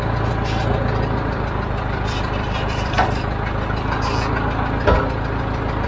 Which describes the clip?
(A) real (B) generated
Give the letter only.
A